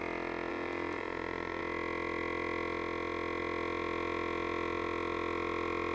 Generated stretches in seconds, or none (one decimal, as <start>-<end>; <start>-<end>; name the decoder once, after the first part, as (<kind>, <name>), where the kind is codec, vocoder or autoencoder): 0.5-1.6 (vocoder, BigVGAN v2)

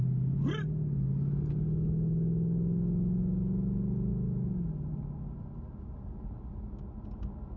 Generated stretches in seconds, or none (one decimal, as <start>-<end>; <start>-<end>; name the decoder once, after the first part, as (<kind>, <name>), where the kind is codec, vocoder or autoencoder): none

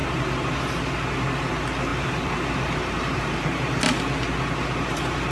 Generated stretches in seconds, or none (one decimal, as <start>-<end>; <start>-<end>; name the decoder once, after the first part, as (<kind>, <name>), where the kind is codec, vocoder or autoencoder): 1.9-3.8 (vocoder, BigVGAN v2)

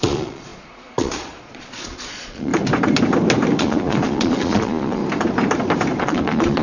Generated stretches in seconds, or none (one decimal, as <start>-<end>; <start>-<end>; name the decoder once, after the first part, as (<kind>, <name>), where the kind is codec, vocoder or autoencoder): 0.0-2.5 (vocoder, Vocos); 3.6-5.0; 6.0-6.6

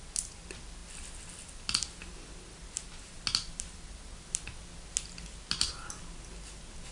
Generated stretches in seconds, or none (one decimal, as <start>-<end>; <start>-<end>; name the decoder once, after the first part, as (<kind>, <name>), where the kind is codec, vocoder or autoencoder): none

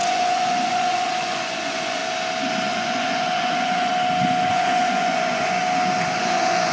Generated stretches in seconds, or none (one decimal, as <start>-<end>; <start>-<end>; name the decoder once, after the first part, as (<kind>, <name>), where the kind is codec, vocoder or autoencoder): 0.0-2.0 (vocoder, Vocos); 2.7-3.9; 4.5-5.6; 6.2-6.7

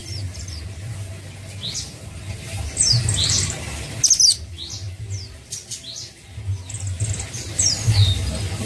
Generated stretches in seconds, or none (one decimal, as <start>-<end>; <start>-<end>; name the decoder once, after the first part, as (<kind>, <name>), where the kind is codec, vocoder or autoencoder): none